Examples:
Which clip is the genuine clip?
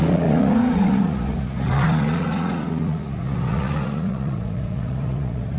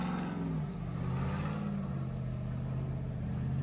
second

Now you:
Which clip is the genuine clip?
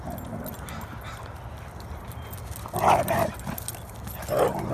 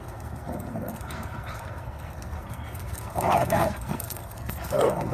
first